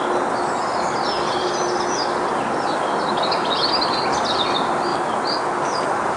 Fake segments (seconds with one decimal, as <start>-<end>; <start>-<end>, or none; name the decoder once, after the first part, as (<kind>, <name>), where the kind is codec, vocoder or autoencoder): none